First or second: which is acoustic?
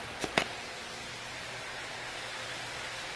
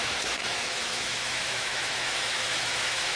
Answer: first